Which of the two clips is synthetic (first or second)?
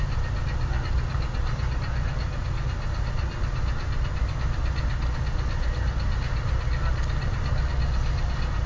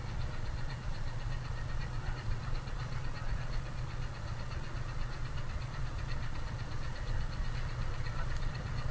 second